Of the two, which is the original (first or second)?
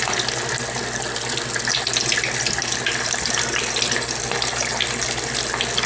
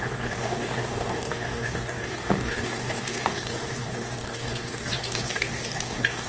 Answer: first